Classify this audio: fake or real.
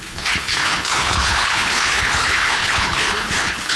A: fake